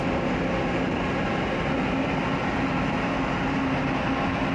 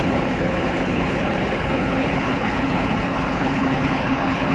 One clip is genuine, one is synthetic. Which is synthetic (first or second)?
second